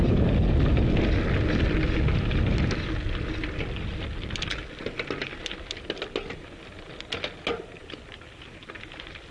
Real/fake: real